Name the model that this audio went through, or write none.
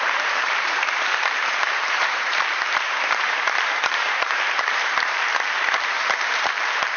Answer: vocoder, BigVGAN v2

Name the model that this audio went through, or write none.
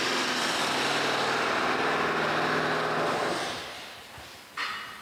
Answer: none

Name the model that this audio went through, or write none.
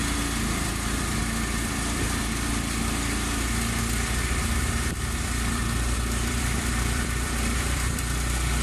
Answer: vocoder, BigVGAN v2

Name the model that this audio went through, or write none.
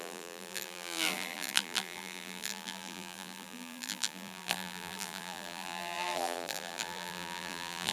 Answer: vocoder, BigVGAN v2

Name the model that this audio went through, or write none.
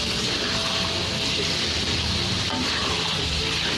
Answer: none